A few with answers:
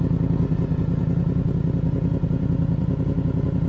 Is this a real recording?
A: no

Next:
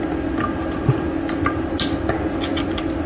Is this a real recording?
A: yes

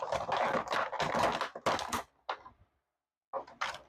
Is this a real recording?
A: yes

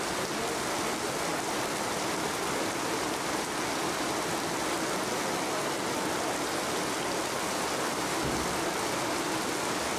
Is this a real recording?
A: yes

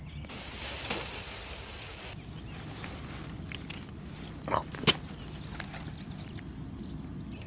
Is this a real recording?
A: yes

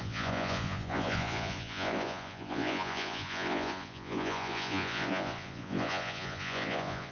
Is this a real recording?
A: no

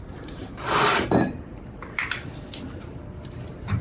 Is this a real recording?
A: no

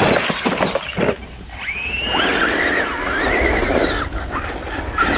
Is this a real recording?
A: yes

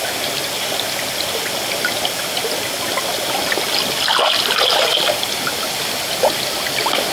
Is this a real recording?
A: yes